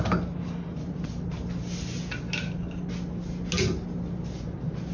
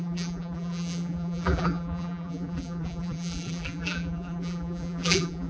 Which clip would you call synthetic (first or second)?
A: second